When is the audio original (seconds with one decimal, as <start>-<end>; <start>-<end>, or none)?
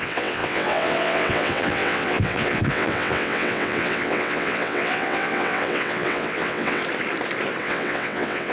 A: 6.8-7.6